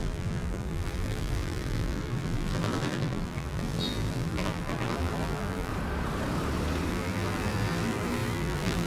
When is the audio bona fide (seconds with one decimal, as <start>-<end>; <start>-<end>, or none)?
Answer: 5.7-6.9